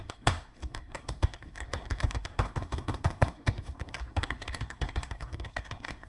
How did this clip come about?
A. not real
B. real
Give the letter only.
A